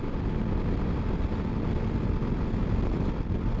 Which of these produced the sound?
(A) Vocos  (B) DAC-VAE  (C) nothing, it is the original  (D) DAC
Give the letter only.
C